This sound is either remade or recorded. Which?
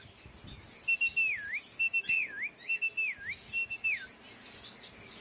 recorded